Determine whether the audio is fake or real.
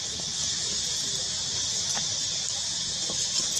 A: real